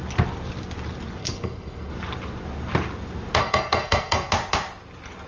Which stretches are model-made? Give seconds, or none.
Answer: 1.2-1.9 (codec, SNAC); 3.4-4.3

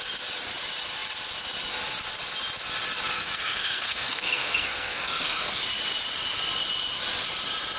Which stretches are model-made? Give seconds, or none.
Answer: 3.1-5.6 (codec, SNAC)

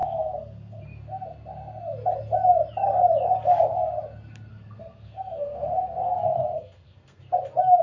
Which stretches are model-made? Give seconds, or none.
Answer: 0.0-0.8 (codec, SNAC); 4.5-7.2